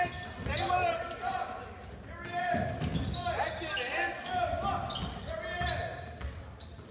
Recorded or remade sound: recorded